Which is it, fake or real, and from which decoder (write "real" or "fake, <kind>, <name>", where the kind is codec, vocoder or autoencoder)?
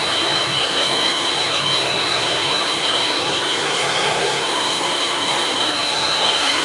fake, codec, SNAC